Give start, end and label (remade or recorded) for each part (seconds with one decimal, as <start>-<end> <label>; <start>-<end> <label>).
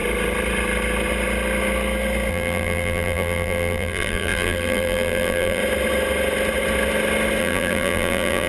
0.0-2.3 recorded; 2.3-5.6 remade; 5.6-7.4 recorded; 7.4-8.5 remade